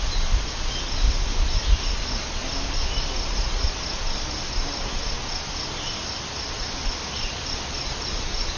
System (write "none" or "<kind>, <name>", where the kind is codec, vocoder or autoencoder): none